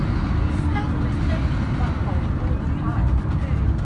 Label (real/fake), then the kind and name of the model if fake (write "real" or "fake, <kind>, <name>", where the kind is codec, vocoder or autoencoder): real